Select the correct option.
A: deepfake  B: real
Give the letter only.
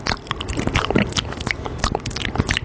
A